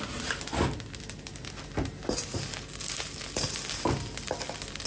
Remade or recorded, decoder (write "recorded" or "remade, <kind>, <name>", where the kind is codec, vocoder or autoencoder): recorded